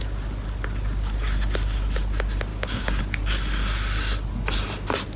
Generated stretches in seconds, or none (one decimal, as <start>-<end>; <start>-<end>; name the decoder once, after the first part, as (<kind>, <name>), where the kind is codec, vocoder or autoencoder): 2.5-3.0 (codec, DAC)